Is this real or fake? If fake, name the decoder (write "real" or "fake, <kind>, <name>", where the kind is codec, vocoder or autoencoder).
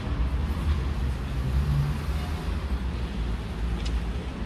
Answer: real